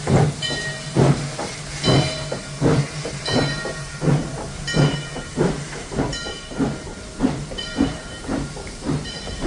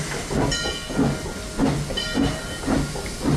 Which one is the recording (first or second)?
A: second